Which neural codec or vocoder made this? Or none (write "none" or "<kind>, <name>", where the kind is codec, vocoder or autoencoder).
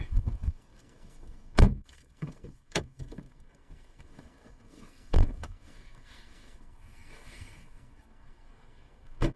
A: codec, SNAC